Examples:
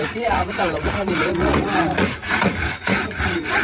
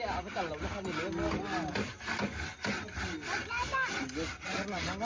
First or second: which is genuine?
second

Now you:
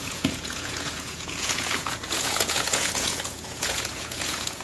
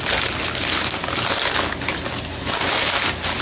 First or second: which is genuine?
second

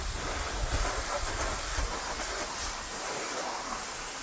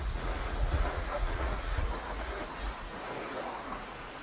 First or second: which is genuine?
first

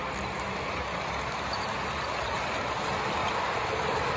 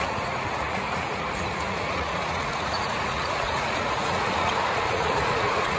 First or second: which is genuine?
first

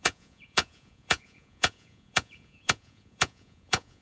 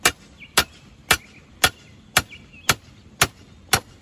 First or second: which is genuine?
second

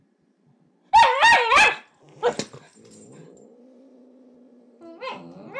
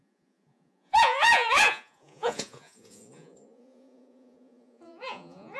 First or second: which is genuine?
first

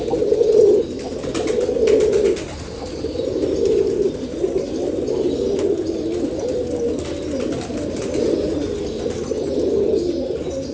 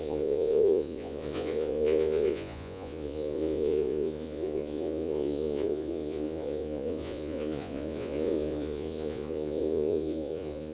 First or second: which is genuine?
first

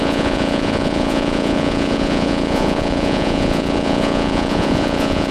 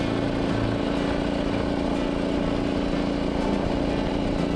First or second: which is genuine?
second